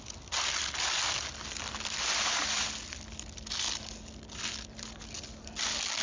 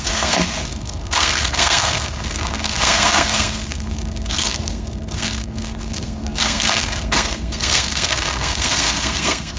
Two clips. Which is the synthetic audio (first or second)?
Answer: second